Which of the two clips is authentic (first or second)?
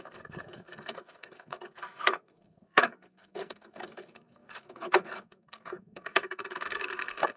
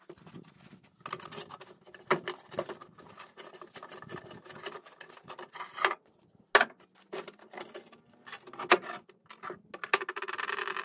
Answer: second